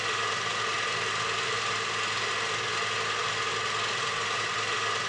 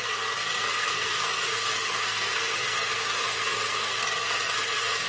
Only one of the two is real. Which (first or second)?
first